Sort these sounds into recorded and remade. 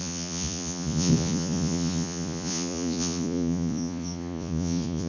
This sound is remade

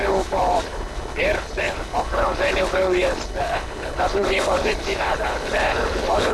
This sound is remade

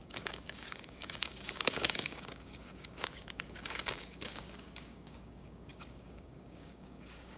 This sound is remade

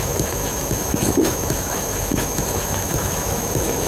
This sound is remade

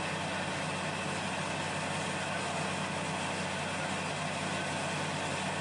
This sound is recorded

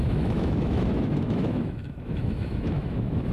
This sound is remade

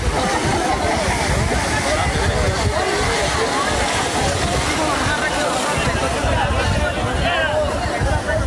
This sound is recorded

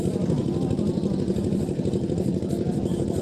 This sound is recorded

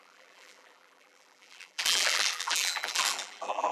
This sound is remade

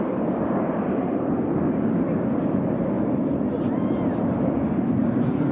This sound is remade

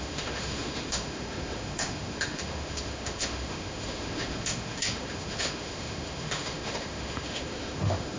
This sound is remade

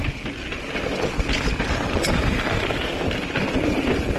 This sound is recorded